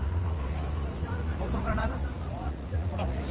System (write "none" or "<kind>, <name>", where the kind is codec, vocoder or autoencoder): vocoder, Vocos